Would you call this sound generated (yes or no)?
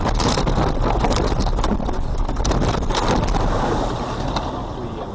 no